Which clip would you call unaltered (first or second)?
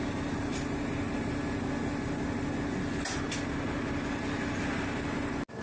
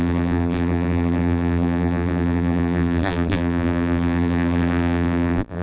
first